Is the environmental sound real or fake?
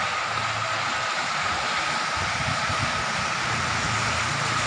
real